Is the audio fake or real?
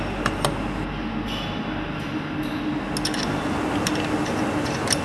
real